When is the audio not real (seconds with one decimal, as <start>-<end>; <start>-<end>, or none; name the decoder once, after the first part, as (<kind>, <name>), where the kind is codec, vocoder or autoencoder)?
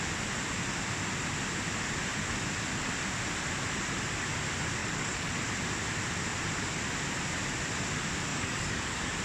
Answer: 4.8-5.3 (codec, DAC); 8.3-9.2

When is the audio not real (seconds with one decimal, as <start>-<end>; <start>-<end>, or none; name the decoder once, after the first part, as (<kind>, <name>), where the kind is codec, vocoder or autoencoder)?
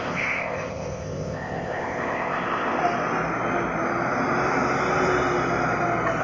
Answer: 0.0-2.8 (codec, ZipCodec)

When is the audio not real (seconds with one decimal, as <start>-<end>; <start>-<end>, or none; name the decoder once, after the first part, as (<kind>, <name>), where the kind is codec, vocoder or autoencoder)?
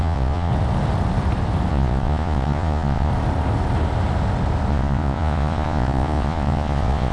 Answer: 0.0-0.5 (vocoder, Vocos); 1.7-3.1; 4.7-7.1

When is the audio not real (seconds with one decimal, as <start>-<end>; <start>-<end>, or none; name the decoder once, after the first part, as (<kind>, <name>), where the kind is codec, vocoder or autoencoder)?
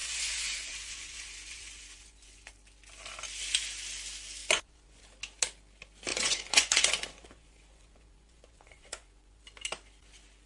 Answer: 0.0-2.5 (vocoder, Vocos); 4.4-5.0; 6.1-9.4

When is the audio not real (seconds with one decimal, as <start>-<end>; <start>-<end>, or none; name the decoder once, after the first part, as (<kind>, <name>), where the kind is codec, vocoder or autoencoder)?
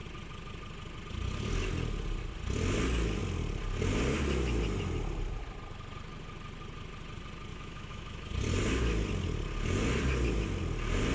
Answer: 7.5-8.3 (autoencoder, DAC-VAE)